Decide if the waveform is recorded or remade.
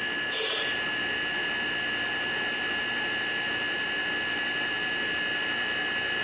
recorded